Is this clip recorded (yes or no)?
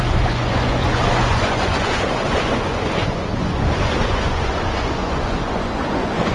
no